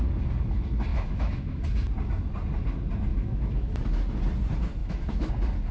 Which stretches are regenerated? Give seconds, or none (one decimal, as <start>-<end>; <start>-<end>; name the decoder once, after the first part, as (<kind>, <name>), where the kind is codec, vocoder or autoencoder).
0.9-1.6 (autoencoder, DAC-VAE); 3.1-3.7; 4.8-5.3